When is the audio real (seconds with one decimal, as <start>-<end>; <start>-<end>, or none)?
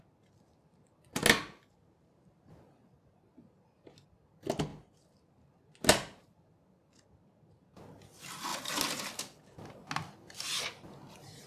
0.0-11.5